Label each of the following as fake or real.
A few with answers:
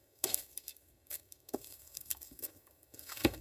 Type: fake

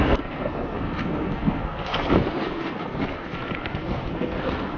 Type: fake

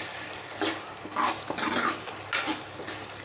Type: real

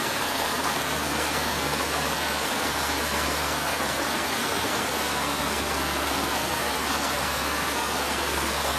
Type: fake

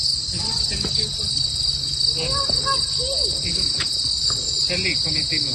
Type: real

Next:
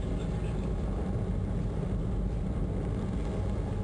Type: real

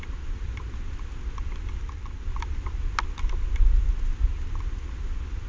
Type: real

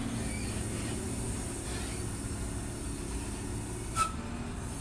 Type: real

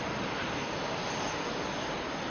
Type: real